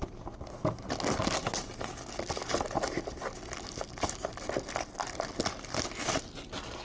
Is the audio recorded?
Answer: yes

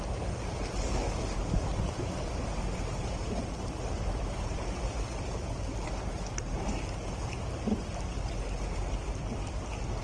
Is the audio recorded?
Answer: yes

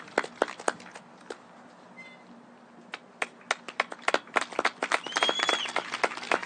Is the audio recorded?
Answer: yes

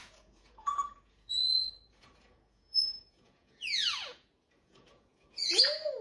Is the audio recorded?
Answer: no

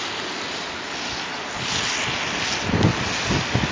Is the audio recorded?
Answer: yes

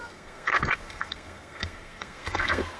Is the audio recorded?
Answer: no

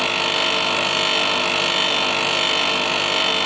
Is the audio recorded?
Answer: yes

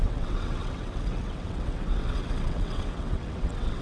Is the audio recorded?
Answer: no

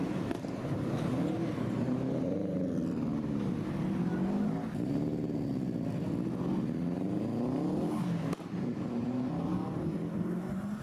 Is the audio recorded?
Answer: yes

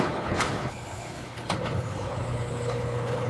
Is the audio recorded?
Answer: no